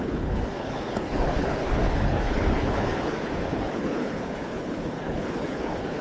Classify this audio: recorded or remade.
remade